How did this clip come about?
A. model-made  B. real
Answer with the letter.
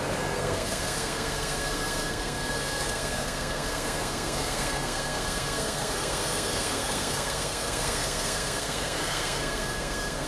A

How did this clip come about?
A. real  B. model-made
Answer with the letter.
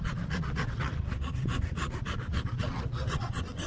B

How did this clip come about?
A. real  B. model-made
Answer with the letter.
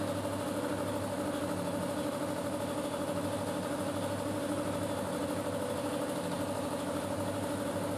A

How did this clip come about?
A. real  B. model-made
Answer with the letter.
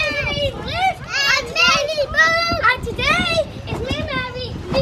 A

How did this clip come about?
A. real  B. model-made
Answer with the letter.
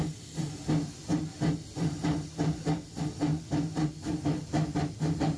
A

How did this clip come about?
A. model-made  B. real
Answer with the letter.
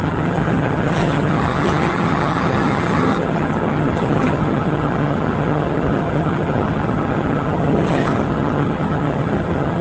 A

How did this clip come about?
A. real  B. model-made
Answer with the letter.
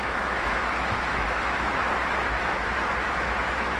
B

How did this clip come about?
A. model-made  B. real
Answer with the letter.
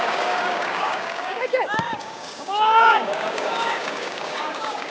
A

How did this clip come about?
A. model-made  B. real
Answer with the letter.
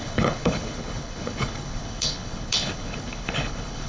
A